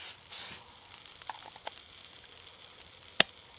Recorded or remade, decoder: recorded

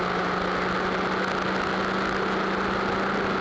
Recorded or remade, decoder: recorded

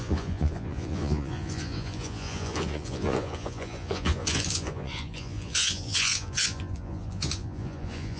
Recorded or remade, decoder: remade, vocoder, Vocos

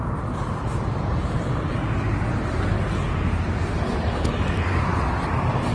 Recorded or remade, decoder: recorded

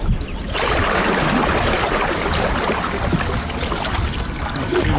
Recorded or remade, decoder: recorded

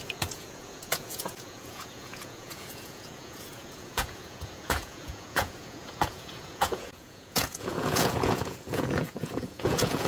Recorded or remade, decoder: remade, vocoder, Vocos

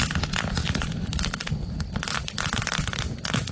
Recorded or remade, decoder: recorded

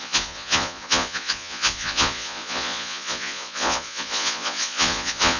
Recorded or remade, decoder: remade, vocoder, Vocos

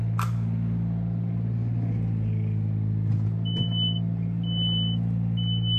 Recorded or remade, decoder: recorded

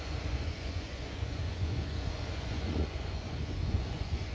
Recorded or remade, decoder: remade, vocoder, Vocos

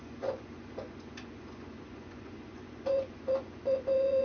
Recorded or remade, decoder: remade, vocoder, Vocos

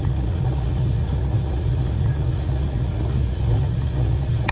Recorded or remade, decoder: remade, vocoder, Vocos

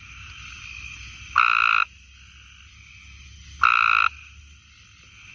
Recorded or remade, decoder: recorded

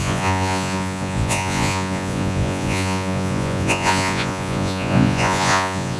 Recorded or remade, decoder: remade, vocoder, Vocos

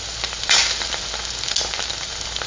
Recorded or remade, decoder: recorded